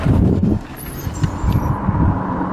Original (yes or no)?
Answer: no